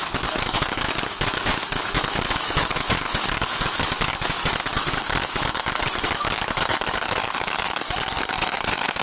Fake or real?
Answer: fake